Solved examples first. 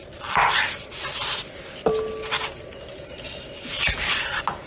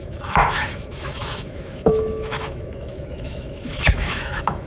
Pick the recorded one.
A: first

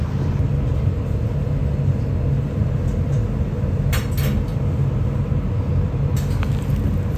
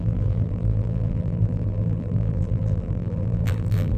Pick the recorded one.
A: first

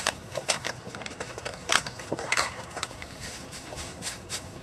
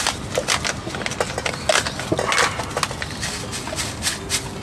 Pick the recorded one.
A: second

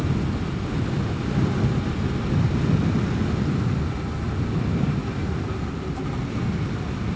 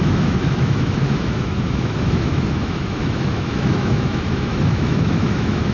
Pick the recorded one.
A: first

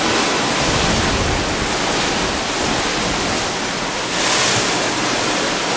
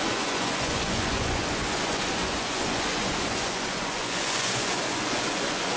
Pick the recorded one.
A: first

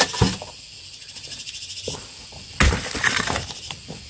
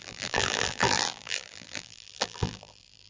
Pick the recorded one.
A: first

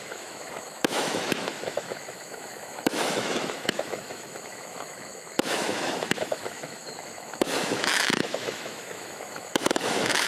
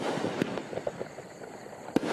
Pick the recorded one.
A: second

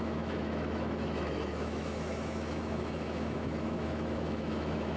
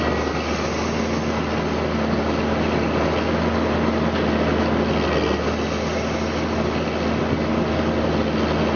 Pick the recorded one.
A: second